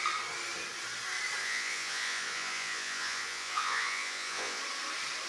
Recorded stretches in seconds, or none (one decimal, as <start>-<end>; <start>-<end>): 0.0-1.4; 4.6-5.3